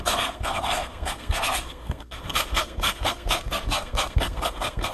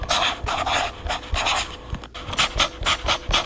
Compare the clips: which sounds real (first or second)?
second